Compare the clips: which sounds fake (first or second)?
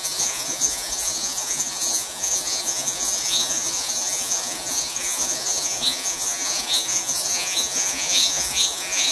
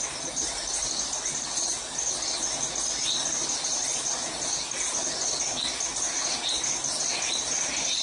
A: first